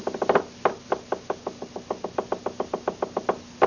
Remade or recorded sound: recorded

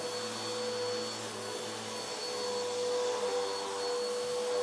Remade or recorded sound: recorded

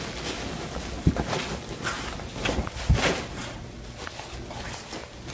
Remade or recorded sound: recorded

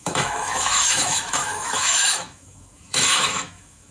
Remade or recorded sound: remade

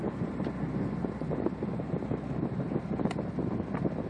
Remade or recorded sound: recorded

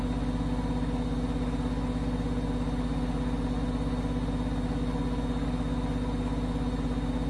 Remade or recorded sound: recorded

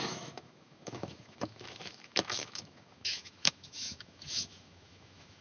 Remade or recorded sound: remade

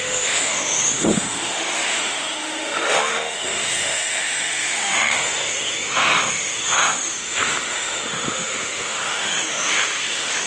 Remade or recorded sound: remade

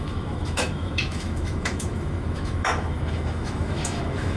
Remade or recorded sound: remade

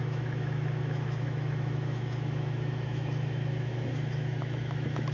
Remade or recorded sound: remade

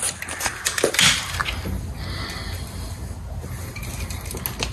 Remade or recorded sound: recorded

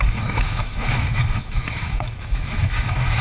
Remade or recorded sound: remade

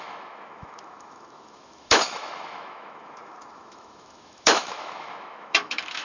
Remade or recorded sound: remade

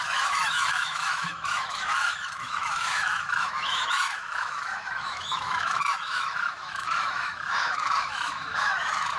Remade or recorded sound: remade